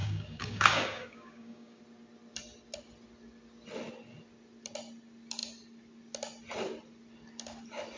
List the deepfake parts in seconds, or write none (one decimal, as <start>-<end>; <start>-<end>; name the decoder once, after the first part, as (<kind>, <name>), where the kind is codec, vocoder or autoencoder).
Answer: 0.0-1.8 (codec, DAC)